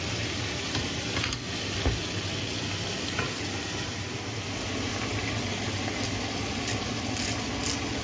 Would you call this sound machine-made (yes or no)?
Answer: no